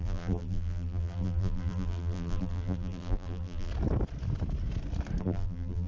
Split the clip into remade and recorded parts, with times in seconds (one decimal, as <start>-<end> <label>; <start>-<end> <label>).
0.0-3.7 remade; 3.7-5.2 recorded; 5.2-5.9 remade